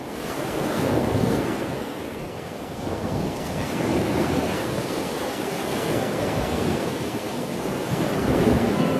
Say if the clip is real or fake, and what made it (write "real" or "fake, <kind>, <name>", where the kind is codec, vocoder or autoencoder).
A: fake, codec, SNAC